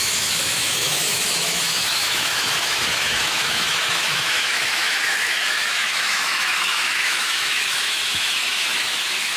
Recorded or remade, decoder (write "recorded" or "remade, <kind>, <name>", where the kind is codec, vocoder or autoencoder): remade, autoencoder, DAC-VAE